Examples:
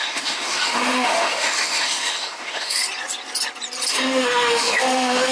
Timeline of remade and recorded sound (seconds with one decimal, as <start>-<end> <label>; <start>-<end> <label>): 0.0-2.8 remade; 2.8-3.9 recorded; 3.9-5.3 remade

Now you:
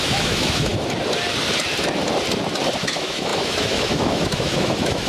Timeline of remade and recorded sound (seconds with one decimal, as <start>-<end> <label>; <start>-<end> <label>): 0.0-0.7 remade; 0.7-2.8 recorded; 2.8-5.1 remade

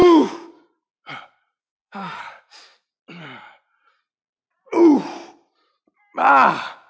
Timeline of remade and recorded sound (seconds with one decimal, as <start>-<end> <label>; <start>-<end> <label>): 0.0-0.5 remade; 0.5-1.6 recorded; 1.6-2.2 remade; 2.2-6.9 recorded

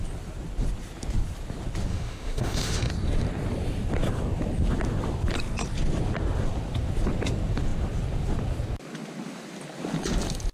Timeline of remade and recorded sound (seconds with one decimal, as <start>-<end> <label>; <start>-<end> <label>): 0.0-1.9 recorded; 1.9-2.9 remade; 2.9-10.5 recorded